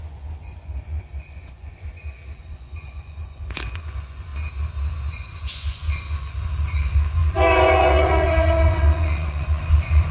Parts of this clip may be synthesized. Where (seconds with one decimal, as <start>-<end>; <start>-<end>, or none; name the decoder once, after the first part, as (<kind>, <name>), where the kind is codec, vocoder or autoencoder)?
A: 0.0-4.3 (vocoder, Vocos); 5.1-10.1

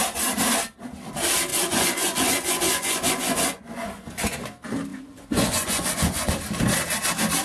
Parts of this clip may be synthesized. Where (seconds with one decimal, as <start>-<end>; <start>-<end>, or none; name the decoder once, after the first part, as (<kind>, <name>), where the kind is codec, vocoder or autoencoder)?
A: 1.5-4.4 (vocoder, Vocos); 4.9-6.3

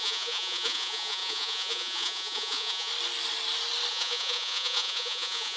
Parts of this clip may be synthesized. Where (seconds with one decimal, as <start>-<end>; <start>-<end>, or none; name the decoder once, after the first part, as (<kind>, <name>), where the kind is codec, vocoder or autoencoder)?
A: 0.0-2.9 (vocoder, Vocos); 3.9-5.6

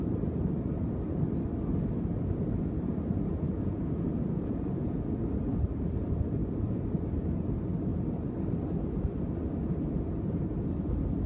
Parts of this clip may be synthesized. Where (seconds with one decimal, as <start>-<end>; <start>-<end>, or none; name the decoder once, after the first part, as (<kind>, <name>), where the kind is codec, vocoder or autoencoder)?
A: 3.3-5.2 (vocoder, Vocos)

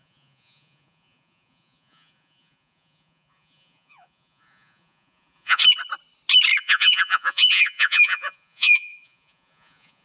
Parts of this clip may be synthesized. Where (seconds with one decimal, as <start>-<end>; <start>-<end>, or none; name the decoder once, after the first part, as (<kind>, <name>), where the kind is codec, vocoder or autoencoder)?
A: 0.0-5.6 (vocoder, Vocos); 6.6-10.0

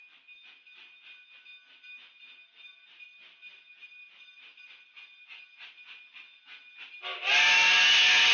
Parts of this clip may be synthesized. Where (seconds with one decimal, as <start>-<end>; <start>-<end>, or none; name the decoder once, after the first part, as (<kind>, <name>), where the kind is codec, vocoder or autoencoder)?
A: none